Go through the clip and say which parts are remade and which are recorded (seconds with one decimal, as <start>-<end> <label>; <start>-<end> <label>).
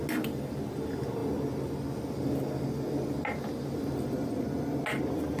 0.0-5.4 recorded